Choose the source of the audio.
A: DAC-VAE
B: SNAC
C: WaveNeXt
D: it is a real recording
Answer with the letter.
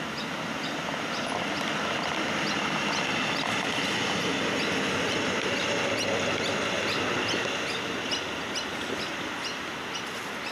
D